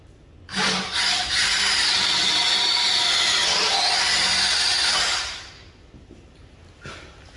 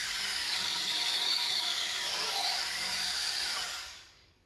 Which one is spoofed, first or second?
second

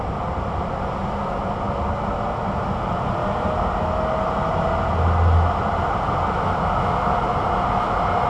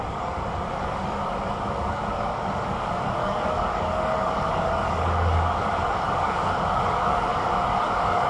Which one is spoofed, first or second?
second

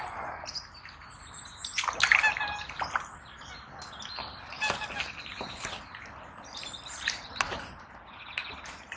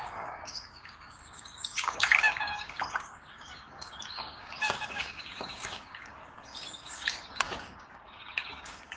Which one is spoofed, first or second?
second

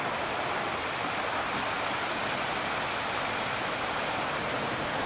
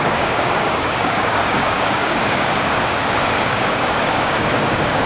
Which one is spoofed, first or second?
second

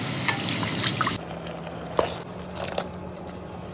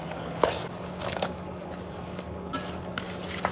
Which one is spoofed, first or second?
second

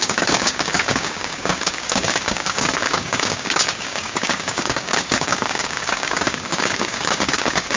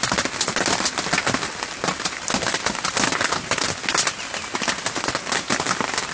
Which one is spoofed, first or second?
first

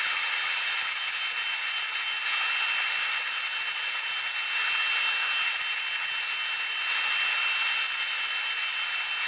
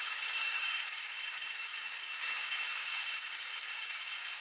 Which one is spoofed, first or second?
second